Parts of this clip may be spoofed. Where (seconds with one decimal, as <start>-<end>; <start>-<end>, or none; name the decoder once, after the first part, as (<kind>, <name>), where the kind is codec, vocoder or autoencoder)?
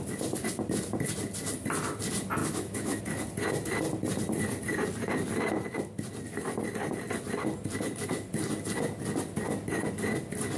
2.4-3.0 (autoencoder, DAC-VAE)